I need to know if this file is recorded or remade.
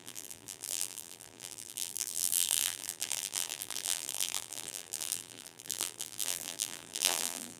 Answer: remade